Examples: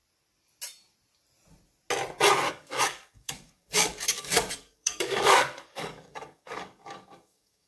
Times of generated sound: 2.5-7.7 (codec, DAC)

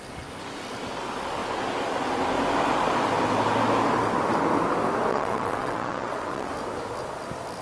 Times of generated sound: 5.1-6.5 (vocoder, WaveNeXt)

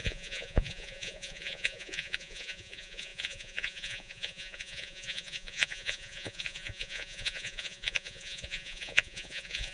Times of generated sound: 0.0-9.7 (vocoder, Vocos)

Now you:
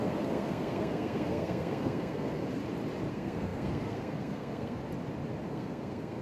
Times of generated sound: 0.0-2.4 (codec, SNAC); 3.1-4.8; 5.5-6.2